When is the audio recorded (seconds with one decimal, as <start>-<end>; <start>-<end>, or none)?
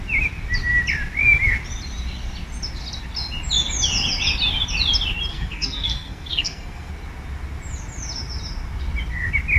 0.0-5.3; 6.9-9.6